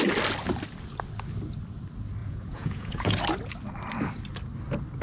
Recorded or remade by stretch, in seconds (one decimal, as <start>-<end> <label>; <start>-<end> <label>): 0.0-2.2 recorded; 2.2-3.2 remade; 3.2-5.0 recorded

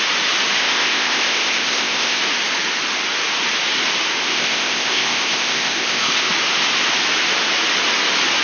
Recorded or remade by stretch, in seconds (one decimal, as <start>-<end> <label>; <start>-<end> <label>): 0.0-0.6 recorded; 0.6-2.2 remade; 2.2-4.3 recorded; 4.3-6.3 remade; 6.3-8.4 recorded